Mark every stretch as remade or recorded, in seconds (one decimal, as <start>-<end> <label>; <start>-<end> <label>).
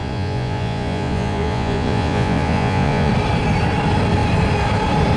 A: 0.0-3.1 remade; 3.1-5.2 recorded